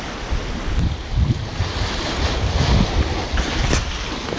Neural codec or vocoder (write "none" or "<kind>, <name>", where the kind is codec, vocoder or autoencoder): none